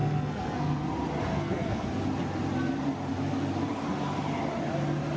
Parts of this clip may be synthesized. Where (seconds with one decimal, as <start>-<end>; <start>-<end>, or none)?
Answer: 0.0-0.9; 1.3-1.9